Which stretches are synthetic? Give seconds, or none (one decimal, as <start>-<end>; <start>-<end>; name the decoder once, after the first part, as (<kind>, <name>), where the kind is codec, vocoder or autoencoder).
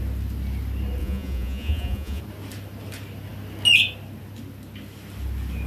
1.0-2.2 (vocoder, Vocos)